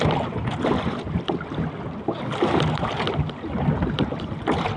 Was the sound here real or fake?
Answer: real